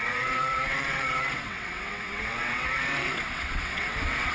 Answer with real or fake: fake